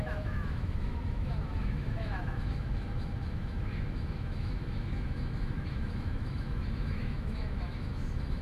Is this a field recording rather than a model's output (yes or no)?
no